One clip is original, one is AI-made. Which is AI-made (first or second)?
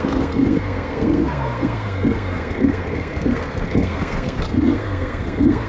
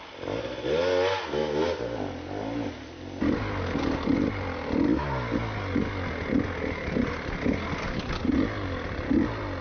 first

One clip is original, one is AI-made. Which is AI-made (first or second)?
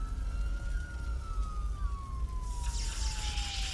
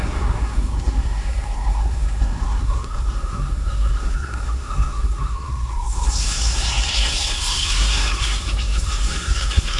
second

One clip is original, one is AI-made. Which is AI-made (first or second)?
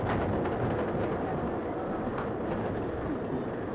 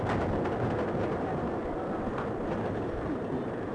second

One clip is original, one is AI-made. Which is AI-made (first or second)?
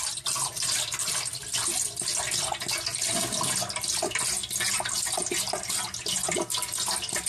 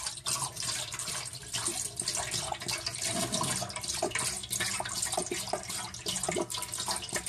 second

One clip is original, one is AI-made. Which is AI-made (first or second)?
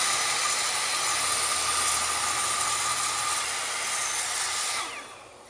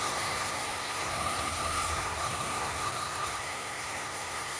second